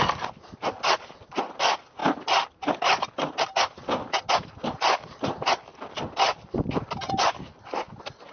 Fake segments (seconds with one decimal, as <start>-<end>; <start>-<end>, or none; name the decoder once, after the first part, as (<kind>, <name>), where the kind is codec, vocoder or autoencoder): none